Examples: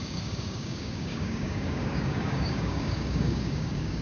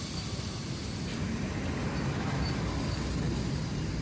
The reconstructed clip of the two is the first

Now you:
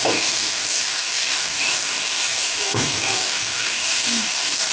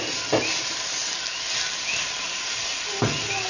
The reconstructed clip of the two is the first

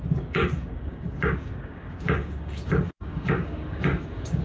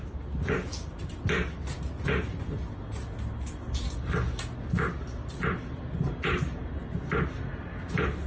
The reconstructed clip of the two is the first